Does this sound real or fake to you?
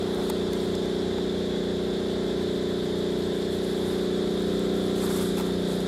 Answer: real